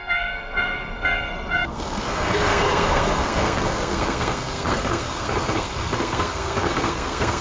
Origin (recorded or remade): remade